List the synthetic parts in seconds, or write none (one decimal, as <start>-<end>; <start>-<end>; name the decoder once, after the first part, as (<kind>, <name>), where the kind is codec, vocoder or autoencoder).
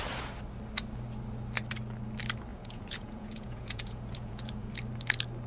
2.5-4.7 (vocoder, Vocos)